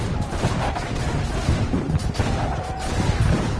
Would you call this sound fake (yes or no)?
yes